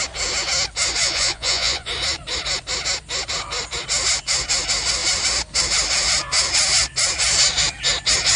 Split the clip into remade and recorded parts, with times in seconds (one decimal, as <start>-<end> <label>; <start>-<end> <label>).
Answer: 0.0-1.0 recorded; 1.0-1.9 remade; 1.9-8.4 recorded